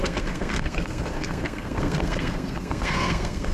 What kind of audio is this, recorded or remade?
remade